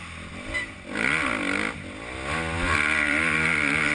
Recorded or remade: recorded